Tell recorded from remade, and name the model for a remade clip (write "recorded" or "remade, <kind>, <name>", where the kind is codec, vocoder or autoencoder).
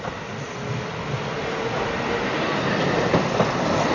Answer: recorded